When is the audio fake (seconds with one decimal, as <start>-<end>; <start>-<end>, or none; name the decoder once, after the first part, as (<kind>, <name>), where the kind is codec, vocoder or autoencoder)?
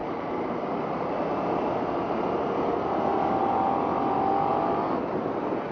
none